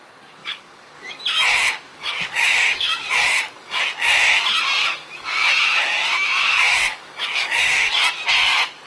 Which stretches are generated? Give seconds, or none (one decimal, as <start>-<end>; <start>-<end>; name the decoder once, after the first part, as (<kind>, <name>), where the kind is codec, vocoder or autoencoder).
0.4-1.2 (codec, DAC); 1.9-3.8; 4.8-5.5; 6.4-7.9